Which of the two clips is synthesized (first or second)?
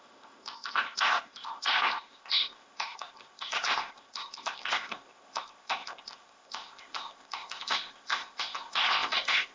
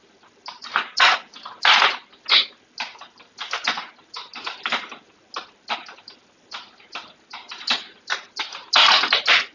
first